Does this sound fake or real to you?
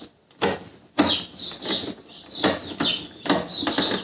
real